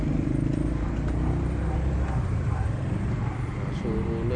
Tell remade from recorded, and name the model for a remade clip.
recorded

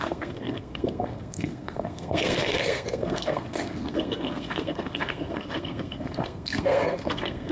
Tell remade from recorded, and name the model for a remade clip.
remade, codec, SNAC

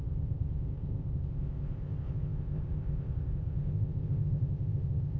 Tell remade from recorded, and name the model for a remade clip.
remade, codec, ZipCodec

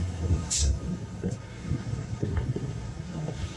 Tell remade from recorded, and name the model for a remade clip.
remade, codec, SNAC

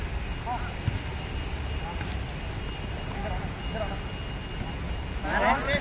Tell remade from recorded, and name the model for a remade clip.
recorded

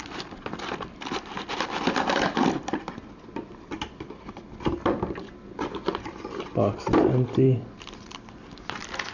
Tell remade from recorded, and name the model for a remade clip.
remade, vocoder, BigVGAN v2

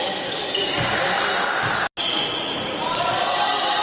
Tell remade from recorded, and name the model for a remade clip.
recorded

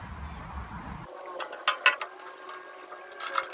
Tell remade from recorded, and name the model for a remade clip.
recorded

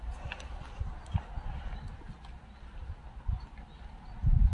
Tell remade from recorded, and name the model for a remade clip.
recorded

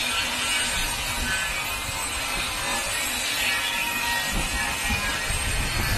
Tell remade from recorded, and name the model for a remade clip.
recorded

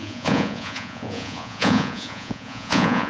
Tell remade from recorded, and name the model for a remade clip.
remade, vocoder, Vocos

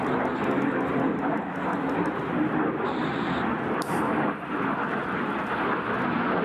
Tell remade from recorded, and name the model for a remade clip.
recorded